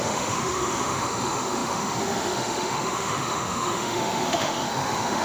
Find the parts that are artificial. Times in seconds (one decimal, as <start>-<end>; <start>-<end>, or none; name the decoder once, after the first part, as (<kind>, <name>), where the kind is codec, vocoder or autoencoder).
0.0-5.2 (autoencoder, DAC-VAE)